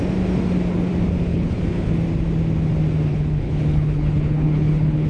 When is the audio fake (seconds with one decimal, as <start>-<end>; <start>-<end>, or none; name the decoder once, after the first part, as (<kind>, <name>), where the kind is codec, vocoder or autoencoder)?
1.3-1.9 (codec, HILCodec); 3.1-5.1